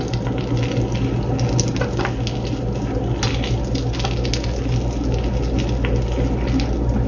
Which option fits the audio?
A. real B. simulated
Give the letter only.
A